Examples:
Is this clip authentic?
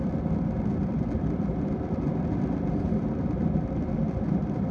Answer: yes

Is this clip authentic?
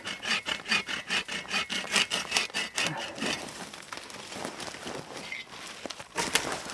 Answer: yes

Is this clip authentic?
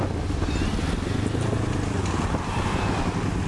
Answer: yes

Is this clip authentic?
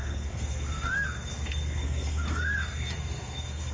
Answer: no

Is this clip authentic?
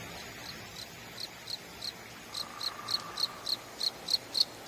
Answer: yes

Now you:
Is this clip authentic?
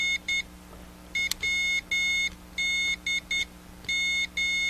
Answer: yes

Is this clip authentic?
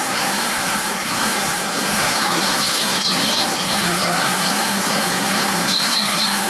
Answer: no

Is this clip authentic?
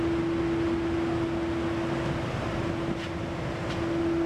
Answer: yes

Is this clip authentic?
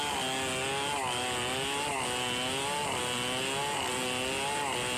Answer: yes